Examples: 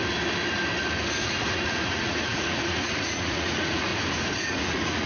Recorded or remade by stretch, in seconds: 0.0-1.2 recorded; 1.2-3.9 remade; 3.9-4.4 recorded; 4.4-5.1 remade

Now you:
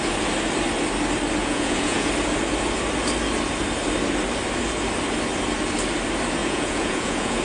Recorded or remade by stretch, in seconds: 0.0-1.4 recorded; 1.4-2.1 remade; 2.1-6.4 recorded; 6.4-7.4 remade

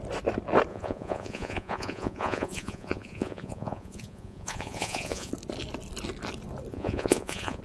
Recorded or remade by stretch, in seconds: 0.0-0.7 recorded; 0.7-5.3 remade; 5.3-6.7 recorded; 6.7-7.6 remade

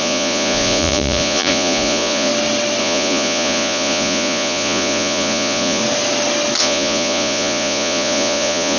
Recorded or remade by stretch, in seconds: 0.0-2.3 remade; 2.3-2.8 recorded; 2.8-5.8 remade; 5.8-6.6 recorded; 6.6-8.8 remade

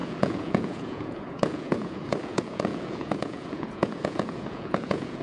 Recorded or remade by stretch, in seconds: 0.0-5.2 remade

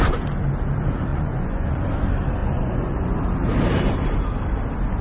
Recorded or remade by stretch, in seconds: 0.0-1.1 recorded; 1.1-1.9 remade; 1.9-2.4 recorded; 2.4-3.2 remade; 3.2-5.0 recorded